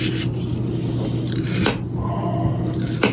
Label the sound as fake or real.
real